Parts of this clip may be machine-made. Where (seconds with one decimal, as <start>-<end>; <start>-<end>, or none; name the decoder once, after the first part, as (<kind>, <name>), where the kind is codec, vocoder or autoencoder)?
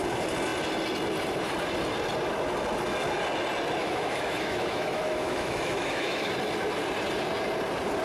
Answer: 3.8-6.3 (autoencoder, DAC-VAE)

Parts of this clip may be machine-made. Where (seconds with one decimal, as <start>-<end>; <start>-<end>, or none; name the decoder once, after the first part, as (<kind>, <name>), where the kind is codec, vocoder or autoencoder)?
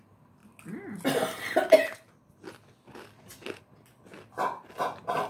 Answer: none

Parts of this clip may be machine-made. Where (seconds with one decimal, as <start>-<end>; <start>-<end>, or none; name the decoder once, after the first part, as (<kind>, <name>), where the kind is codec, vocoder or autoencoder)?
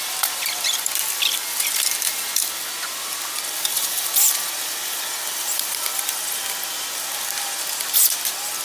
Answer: 0.0-6.4 (vocoder, BigVGAN v2); 7.0-8.6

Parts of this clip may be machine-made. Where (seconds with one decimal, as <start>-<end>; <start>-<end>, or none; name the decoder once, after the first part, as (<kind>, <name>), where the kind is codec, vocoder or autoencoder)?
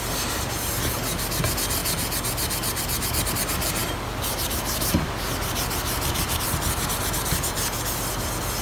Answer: none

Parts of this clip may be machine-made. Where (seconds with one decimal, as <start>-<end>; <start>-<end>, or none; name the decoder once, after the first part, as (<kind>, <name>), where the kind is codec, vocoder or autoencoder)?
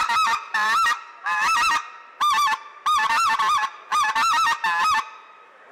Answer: none